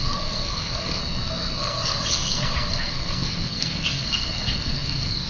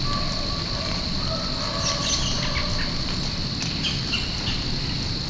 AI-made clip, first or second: first